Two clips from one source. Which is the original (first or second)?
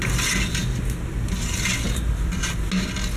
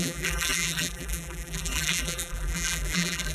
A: first